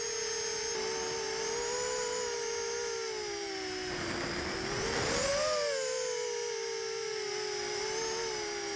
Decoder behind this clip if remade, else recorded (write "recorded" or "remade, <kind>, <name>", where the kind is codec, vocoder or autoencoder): recorded